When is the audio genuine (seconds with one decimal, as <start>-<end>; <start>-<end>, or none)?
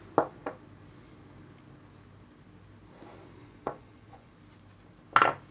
0.0-3.4; 4.3-5.5